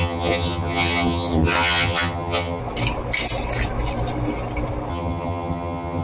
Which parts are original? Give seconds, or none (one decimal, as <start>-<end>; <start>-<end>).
2.6-4.9